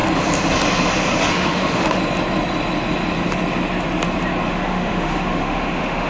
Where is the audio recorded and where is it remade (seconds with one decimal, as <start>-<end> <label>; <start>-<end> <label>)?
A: 0.0-1.3 recorded; 1.3-2.0 remade; 2.0-4.5 recorded; 4.5-6.1 remade

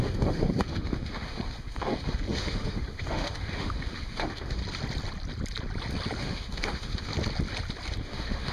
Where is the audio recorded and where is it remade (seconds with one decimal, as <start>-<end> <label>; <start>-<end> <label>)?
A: 0.0-4.6 remade; 4.6-6.2 recorded; 6.2-7.1 remade; 7.1-8.0 recorded; 8.0-8.5 remade

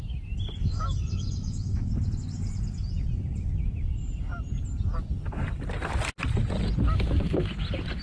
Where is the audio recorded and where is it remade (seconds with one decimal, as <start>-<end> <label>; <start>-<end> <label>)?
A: 0.0-0.6 recorded; 0.6-1.9 remade; 1.9-8.0 recorded

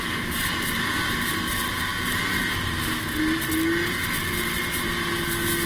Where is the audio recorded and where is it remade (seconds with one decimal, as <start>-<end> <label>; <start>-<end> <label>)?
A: 0.0-5.7 recorded

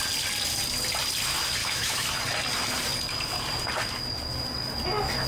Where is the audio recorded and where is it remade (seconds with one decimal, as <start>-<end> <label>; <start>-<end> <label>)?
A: 0.0-1.6 recorded; 1.6-2.2 remade; 2.2-5.3 recorded

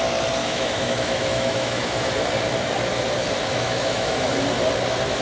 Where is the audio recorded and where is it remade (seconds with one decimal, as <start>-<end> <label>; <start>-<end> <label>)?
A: 0.0-0.4 recorded; 0.4-2.1 remade; 2.1-3.5 recorded; 3.5-4.3 remade; 4.3-5.2 recorded

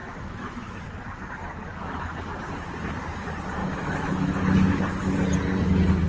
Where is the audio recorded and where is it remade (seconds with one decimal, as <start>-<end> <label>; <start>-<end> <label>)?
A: 0.0-0.8 remade; 0.8-1.4 recorded; 1.4-2.1 remade; 2.1-3.6 recorded; 3.6-4.3 remade; 4.3-6.1 recorded